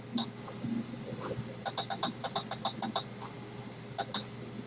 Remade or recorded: recorded